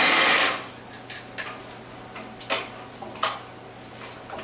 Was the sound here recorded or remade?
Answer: recorded